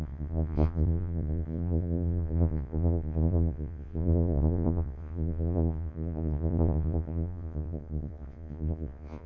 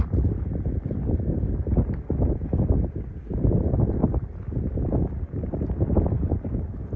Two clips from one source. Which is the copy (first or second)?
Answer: first